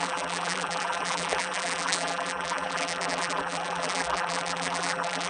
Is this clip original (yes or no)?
no